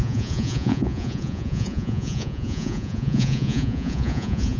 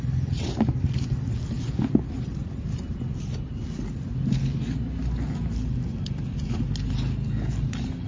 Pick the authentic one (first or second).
second